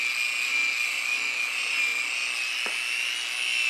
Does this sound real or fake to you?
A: real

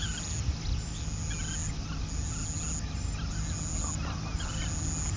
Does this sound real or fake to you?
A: real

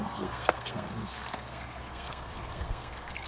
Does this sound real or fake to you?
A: fake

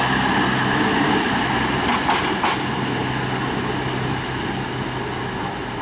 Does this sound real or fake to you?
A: real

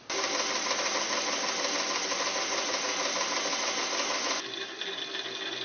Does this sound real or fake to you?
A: real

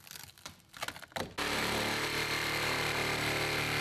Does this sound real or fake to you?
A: real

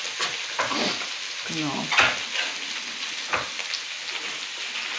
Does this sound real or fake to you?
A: real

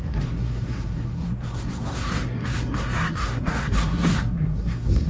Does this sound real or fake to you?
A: fake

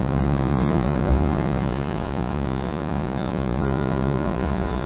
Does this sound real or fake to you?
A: fake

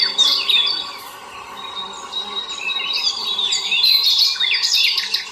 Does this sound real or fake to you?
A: fake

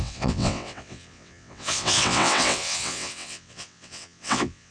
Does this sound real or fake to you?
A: fake